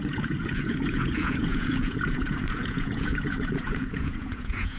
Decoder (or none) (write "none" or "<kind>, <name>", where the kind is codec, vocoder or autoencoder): vocoder, Vocos